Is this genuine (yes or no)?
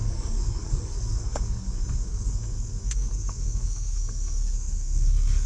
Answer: no